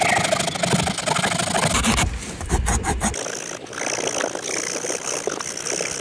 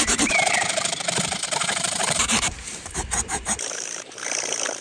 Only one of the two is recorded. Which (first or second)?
first